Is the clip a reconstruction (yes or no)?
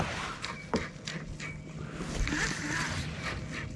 no